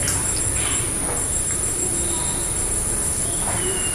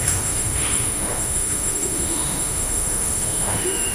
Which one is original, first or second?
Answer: first